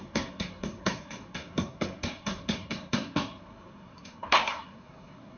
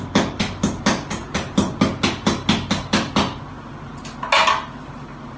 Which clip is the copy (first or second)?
first